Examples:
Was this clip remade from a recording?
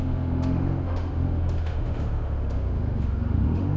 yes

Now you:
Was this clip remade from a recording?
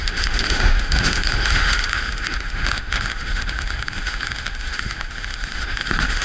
yes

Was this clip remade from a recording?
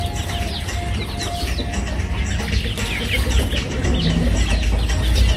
no